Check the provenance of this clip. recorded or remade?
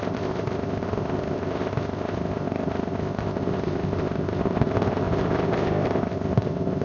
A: remade